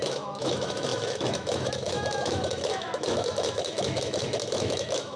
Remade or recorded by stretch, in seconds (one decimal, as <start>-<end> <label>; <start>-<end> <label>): 0.0-5.2 remade